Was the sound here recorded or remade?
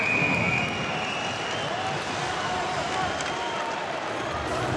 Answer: recorded